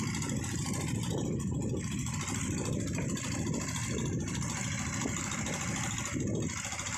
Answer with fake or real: real